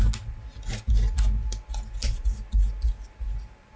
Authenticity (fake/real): real